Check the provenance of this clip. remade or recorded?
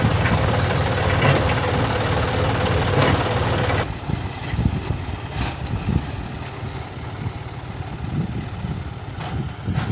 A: recorded